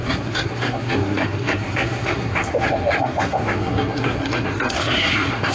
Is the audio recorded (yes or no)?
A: no